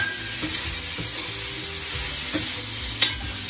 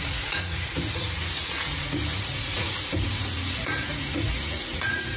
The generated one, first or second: second